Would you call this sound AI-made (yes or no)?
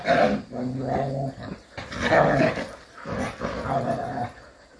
no